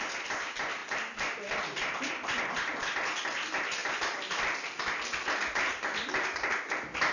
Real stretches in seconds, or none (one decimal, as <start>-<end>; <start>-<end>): 0.0-7.1